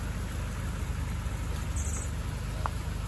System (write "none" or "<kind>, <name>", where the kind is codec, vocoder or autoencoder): none